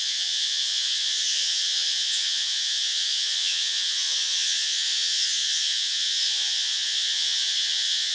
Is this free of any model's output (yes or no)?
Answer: no